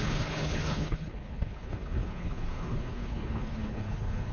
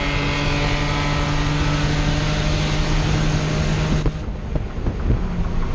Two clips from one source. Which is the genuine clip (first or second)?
second